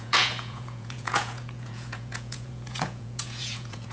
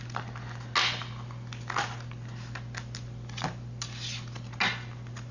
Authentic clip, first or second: second